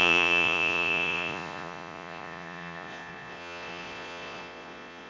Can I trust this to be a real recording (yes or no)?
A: no